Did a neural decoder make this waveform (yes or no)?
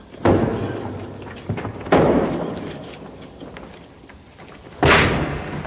no